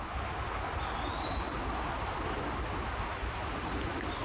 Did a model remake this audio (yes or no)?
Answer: no